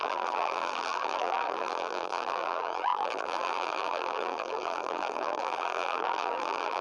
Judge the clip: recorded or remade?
remade